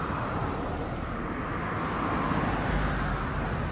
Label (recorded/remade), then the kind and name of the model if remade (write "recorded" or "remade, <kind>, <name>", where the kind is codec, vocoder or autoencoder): recorded